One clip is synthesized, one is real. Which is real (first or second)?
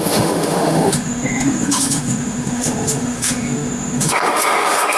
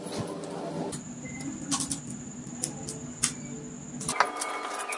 second